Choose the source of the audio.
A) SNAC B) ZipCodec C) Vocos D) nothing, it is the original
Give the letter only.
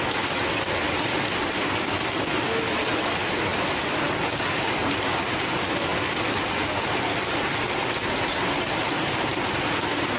D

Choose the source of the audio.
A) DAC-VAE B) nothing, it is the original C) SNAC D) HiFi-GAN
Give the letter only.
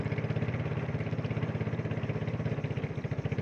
B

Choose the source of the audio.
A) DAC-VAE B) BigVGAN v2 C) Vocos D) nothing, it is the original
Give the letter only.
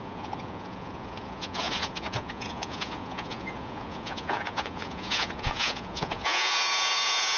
C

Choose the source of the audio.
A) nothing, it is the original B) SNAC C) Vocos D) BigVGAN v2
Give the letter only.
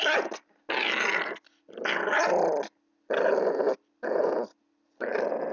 A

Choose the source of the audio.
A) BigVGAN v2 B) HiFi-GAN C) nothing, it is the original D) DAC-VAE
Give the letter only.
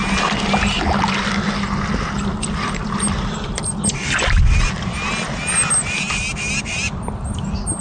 C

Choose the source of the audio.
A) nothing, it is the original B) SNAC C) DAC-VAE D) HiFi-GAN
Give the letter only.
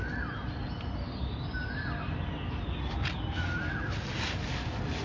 A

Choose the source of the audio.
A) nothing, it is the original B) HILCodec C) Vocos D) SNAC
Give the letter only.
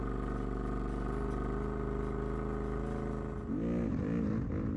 A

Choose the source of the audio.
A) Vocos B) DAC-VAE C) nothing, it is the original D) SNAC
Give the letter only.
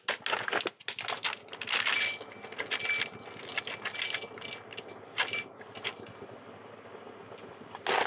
C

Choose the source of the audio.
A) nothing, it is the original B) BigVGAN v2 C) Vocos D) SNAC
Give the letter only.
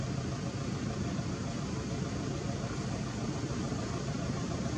A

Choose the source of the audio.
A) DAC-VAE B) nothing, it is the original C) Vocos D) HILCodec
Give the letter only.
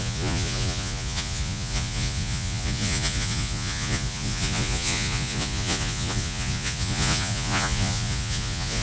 C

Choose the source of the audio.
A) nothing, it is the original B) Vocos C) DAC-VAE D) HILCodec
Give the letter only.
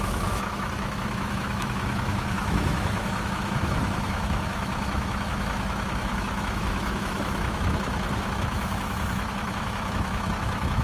C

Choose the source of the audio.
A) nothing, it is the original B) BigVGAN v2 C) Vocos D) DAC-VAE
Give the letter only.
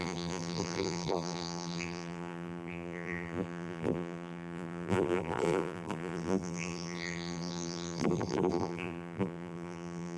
B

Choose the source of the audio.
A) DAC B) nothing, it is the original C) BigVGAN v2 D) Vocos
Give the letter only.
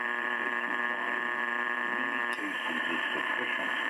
C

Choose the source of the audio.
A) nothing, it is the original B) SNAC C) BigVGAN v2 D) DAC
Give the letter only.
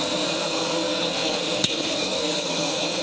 B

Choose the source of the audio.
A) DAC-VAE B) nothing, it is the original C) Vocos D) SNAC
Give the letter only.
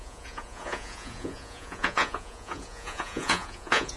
C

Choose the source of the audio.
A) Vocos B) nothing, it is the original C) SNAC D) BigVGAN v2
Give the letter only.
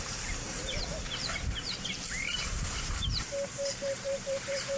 D